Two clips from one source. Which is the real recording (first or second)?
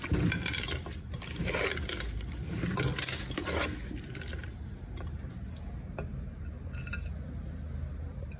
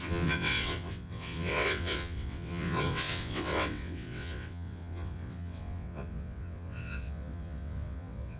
first